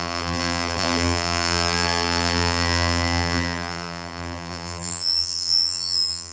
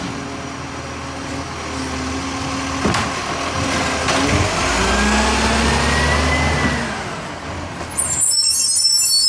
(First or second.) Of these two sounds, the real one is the second